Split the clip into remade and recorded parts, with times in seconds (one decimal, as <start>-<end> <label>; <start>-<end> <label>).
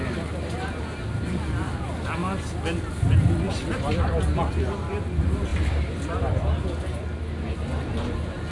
0.0-5.5 recorded; 5.5-6.7 remade; 6.7-8.5 recorded